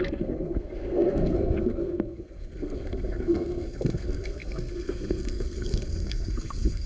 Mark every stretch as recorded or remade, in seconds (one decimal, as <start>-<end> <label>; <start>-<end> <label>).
0.0-6.9 remade